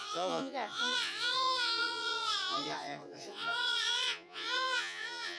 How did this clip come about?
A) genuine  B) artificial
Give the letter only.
B